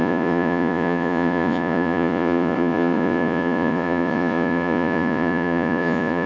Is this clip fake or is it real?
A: fake